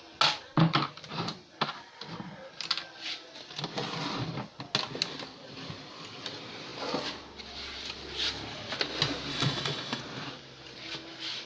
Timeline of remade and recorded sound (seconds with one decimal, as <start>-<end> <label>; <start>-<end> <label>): 0.0-9.3 recorded; 9.3-10.0 remade; 10.0-11.5 recorded